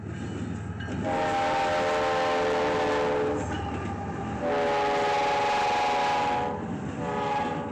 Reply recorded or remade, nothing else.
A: recorded